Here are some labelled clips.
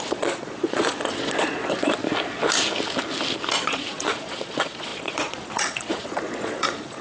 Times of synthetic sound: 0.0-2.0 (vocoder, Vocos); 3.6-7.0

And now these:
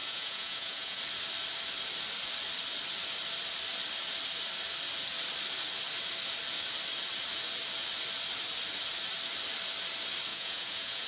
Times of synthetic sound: 0.0-1.0 (vocoder, Vocos); 10.3-11.1